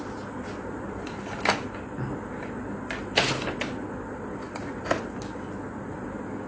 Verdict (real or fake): real